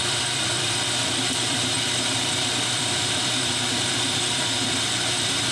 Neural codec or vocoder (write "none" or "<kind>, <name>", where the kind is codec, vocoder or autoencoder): vocoder, BigVGAN v2